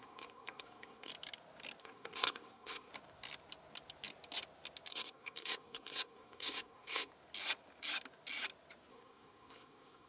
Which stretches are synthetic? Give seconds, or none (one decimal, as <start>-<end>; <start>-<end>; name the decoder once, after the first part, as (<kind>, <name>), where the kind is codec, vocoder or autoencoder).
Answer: 0.0-1.1 (codec, SNAC); 1.8-2.9; 4.9-7.1; 8.9-10.1